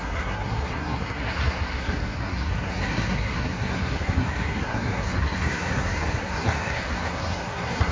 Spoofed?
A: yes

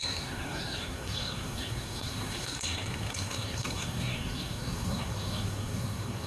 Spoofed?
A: yes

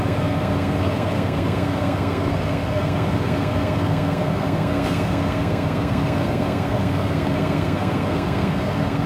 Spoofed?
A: yes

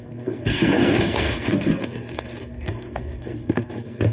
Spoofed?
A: yes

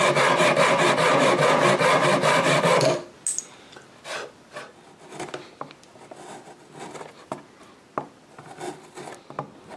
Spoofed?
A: no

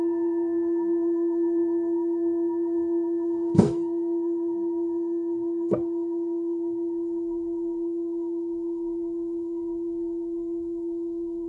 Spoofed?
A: yes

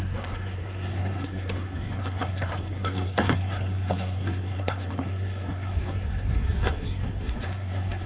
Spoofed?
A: yes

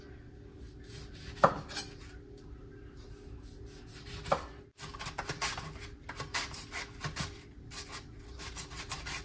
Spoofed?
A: no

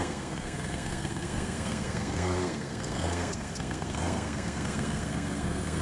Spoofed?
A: yes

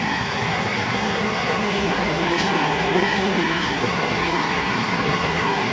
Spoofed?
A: yes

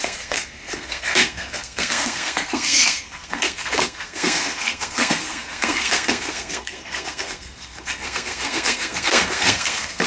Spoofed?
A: yes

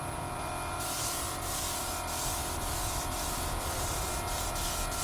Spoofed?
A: no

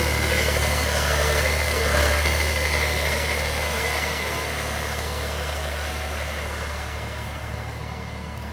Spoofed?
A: yes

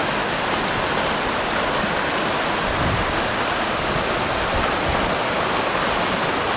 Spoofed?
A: no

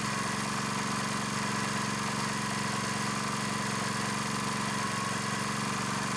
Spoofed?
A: no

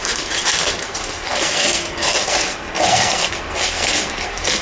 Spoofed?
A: yes